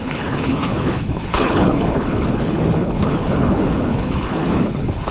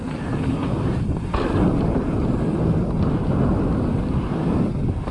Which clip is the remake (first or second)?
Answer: first